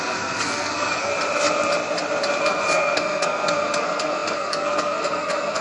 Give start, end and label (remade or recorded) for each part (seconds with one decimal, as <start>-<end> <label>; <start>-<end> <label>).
0.0-1.1 remade; 1.1-2.4 recorded; 2.4-5.6 remade